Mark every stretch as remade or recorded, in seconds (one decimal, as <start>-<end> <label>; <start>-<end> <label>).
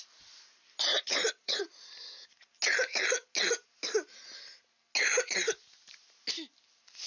0.0-0.9 recorded; 0.9-1.6 remade; 1.6-7.1 recorded